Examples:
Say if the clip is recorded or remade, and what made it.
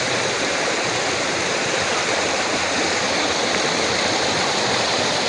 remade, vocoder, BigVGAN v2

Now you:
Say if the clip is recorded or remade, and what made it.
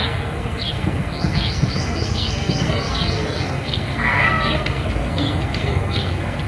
remade, codec, SNAC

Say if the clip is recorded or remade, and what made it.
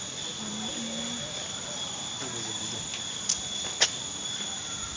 recorded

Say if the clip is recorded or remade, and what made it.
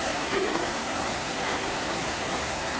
remade, codec, SNAC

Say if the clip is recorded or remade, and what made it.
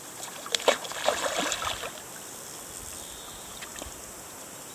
recorded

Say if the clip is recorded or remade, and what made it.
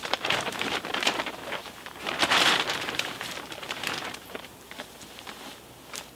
remade, vocoder, BigVGAN v2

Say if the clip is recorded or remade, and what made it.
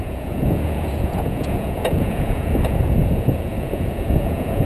remade, vocoder, Vocos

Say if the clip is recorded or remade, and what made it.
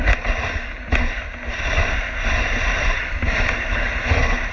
recorded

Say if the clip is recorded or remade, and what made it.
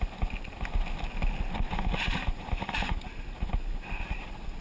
recorded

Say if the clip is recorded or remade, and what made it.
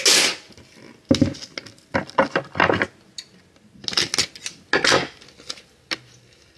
recorded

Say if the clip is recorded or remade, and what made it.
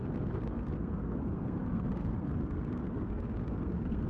remade, codec, SNAC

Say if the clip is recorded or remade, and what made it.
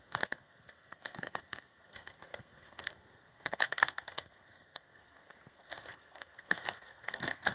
remade, codec, SNAC